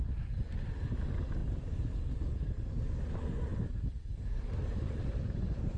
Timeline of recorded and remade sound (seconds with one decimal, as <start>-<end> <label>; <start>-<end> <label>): 0.0-5.8 recorded